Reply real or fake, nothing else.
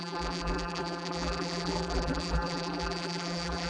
fake